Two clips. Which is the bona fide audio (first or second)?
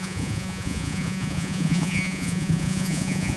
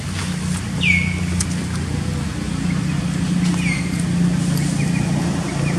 second